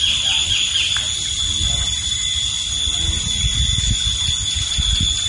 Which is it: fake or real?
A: real